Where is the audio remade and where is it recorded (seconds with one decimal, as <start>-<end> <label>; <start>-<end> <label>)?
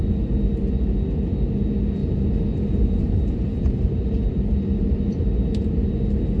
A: 0.0-2.0 recorded; 2.0-5.8 remade; 5.8-6.4 recorded